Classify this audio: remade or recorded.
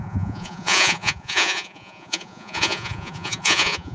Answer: remade